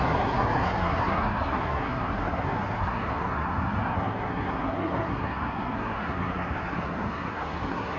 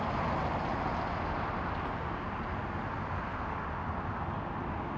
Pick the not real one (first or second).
first